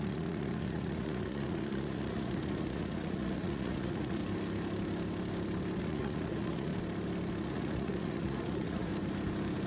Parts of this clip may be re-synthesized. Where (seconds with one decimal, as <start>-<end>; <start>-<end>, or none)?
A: 0.0-4.2; 5.8-6.7; 7.4-8.9